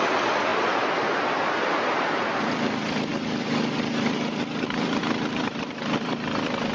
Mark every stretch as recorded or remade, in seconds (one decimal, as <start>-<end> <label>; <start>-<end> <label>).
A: 0.0-0.5 remade; 0.5-2.0 recorded; 2.0-6.7 remade